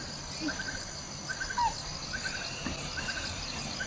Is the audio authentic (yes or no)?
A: yes